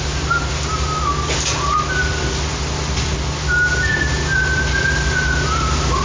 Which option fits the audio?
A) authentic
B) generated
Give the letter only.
A